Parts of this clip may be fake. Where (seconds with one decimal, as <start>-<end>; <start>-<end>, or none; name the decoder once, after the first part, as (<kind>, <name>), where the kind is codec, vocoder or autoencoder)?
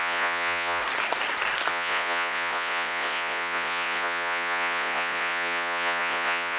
0.0-0.8 (vocoder, Vocos); 1.7-6.6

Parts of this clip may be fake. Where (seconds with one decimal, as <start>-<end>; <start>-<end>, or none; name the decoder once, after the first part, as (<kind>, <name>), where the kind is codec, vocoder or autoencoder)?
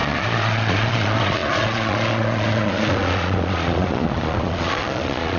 0.0-5.4 (vocoder, Vocos)